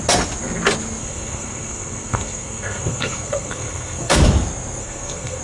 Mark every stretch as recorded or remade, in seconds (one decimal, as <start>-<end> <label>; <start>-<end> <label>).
0.0-1.0 recorded; 1.0-4.2 remade; 4.2-4.8 recorded; 4.8-5.4 remade